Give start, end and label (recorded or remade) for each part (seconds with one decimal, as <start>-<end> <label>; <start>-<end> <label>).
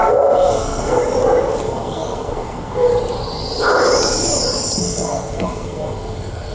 0.0-1.0 remade; 1.0-1.6 recorded; 1.6-2.9 remade; 2.9-4.8 recorded; 4.8-6.5 remade